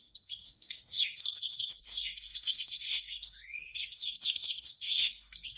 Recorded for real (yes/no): no